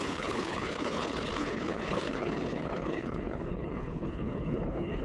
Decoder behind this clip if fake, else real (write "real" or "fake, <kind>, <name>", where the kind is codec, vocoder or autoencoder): fake, codec, HILCodec